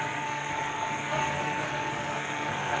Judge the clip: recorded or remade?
remade